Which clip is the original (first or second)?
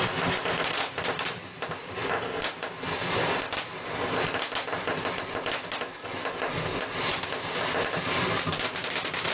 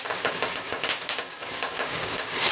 first